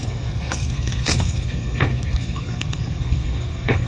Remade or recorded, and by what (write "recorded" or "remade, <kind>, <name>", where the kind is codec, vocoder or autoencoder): remade, codec, SNAC